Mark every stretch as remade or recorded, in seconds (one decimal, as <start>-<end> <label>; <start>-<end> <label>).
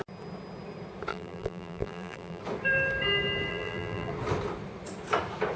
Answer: 0.0-1.1 recorded; 1.1-2.4 remade; 2.4-3.5 recorded; 3.5-4.1 remade; 4.1-5.6 recorded